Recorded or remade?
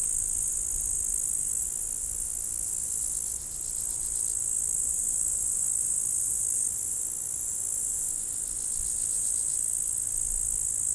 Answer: recorded